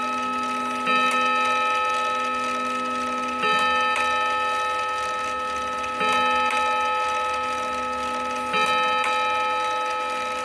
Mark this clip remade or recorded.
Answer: recorded